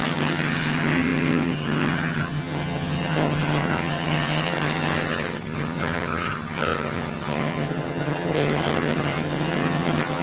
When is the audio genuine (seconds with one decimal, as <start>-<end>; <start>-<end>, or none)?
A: none